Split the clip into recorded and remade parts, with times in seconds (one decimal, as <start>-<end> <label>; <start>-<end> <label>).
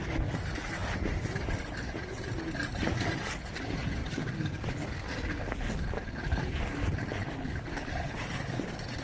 0.0-0.8 recorded; 0.8-3.5 remade; 3.5-4.0 recorded; 4.0-4.7 remade; 4.7-9.0 recorded